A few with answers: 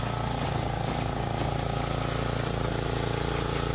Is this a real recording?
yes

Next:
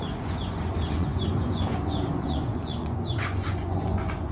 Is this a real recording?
no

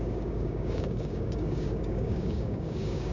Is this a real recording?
no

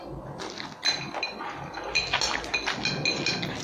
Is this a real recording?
yes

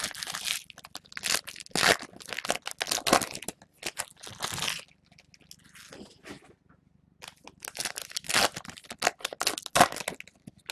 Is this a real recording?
yes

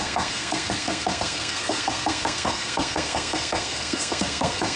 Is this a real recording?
no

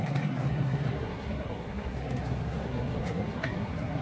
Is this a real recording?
no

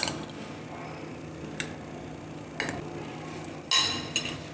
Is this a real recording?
yes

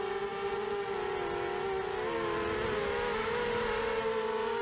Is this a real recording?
yes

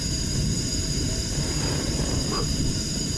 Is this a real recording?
no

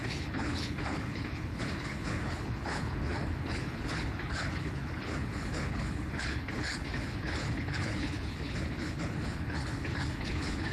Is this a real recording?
no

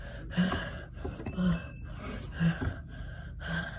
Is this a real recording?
yes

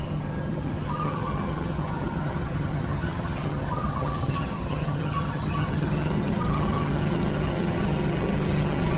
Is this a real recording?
no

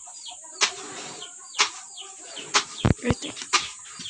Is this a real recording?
no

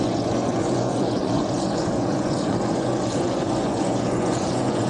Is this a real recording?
no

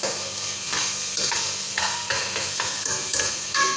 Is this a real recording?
no